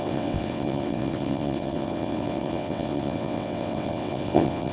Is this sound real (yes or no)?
no